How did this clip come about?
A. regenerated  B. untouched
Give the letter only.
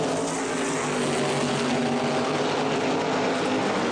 B